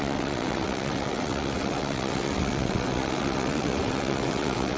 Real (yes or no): no